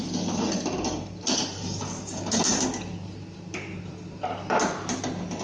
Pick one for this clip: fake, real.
real